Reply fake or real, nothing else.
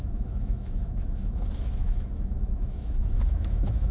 fake